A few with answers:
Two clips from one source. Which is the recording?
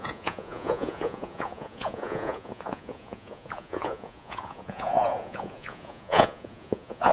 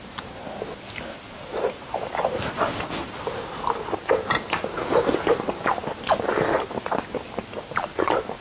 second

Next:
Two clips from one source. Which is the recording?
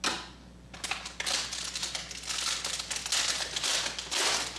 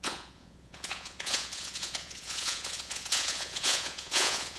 first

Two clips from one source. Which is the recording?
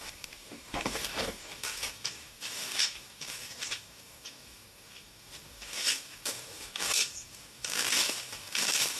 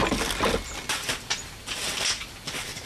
second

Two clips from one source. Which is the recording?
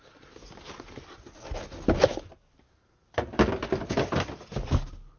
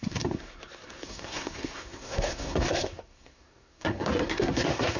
first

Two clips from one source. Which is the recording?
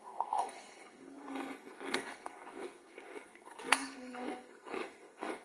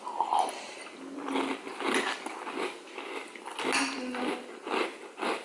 second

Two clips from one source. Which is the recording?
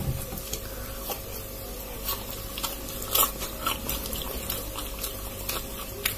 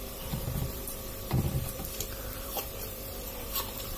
first